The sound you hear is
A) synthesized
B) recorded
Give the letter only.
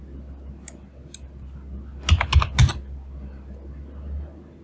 B